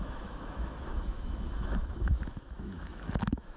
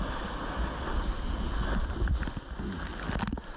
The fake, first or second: first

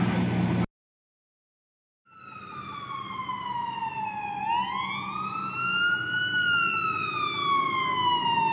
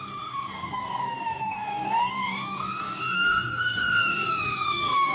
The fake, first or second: second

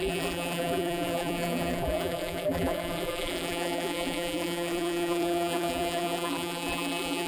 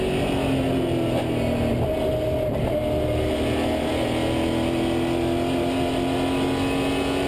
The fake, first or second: first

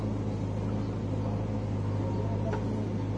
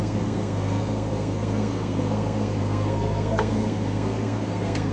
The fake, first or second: second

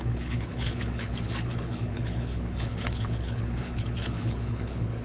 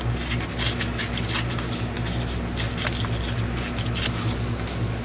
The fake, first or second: first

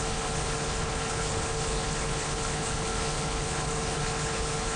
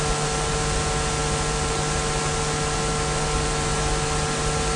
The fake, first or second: first